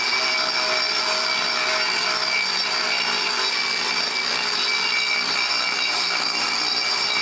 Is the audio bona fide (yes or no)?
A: yes